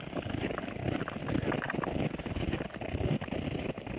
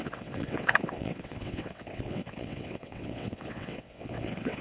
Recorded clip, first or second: first